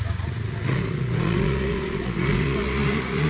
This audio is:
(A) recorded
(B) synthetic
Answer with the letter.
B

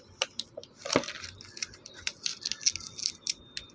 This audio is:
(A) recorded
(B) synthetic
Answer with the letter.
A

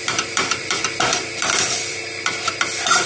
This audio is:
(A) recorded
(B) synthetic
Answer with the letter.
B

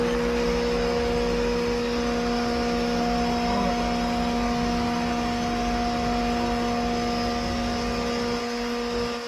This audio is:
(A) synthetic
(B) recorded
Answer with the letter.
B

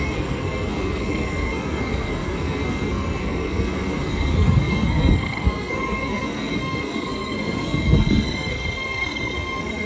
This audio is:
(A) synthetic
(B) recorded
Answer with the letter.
A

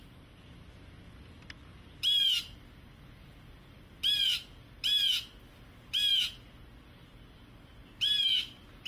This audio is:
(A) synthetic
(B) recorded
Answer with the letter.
B